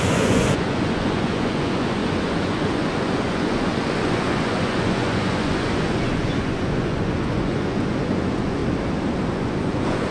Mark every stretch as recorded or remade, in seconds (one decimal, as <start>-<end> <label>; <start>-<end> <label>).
0.0-8.6 remade; 8.6-9.3 recorded; 9.3-10.1 remade